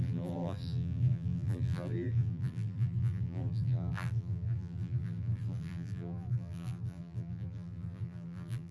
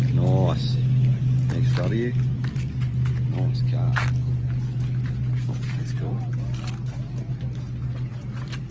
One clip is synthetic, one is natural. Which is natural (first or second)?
second